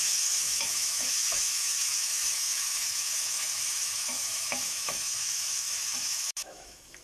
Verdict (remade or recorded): remade